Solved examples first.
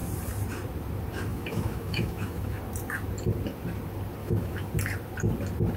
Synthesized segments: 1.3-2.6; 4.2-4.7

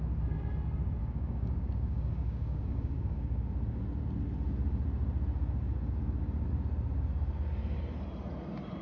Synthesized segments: 1.0-3.5

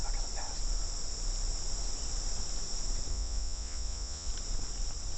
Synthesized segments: 3.1-4.3

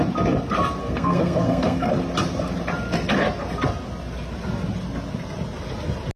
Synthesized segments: 0.8-1.9

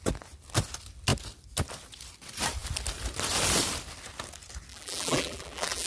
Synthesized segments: 4.7-5.9